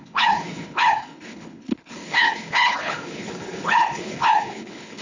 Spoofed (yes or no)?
yes